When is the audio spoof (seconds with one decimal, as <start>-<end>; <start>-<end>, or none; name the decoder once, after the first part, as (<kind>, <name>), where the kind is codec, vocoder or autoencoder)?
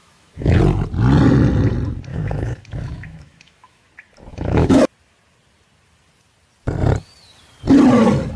0.0-0.6 (autoencoder, DAC-VAE); 2.1-3.9; 4.3-4.8